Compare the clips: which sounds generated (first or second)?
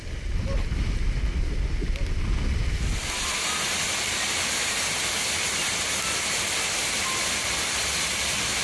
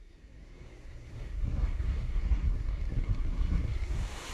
second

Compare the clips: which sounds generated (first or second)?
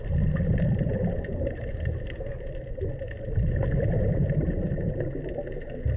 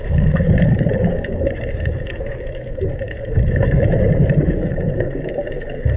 second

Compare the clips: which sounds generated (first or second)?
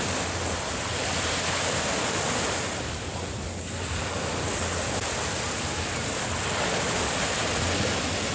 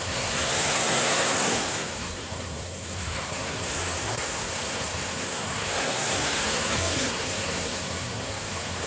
second